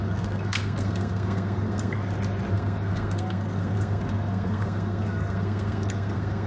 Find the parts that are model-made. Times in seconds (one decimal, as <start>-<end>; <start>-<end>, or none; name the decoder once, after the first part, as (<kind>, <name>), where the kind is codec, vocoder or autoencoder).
0.0-2.0 (codec, SNAC); 2.5-6.5